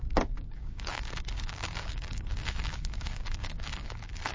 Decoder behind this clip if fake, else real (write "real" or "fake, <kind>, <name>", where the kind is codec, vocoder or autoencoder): fake, codec, DAC